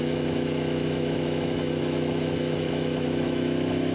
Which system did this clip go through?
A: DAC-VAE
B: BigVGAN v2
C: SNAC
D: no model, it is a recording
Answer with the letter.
A